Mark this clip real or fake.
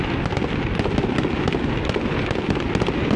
real